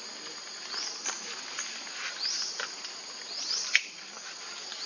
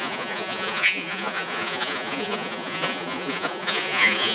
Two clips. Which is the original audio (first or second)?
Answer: first